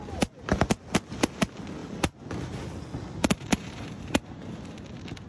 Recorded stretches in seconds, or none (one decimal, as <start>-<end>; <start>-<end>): 0.0-3.2; 4.2-5.3